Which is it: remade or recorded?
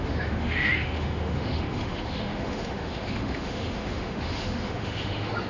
remade